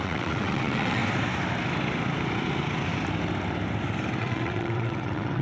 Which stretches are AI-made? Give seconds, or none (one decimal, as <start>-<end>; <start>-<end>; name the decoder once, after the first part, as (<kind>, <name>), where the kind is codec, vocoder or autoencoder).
0.0-1.0 (vocoder, WaveNeXt); 4.2-5.4